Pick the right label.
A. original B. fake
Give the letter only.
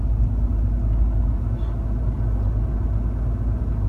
A